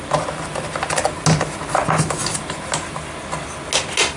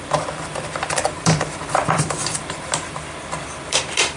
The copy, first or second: second